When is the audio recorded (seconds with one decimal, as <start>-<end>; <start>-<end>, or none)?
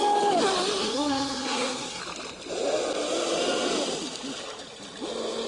0.0-0.8; 2.0-5.5